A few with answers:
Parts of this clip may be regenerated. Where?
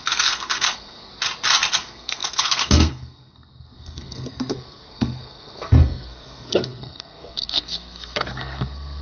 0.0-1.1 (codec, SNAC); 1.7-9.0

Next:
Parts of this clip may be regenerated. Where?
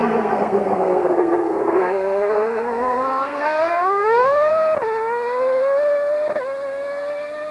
0.0-4.5 (codec, SNAC)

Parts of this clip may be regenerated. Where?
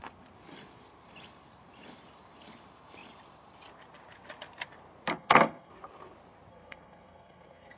5.1-5.7 (codec, SNAC); 6.5-7.8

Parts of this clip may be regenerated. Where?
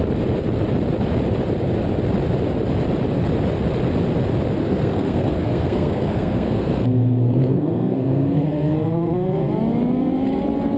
4.6-9.5 (codec, SNAC)